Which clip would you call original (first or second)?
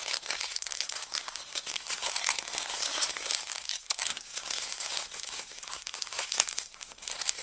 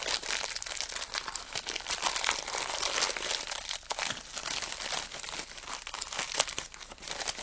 second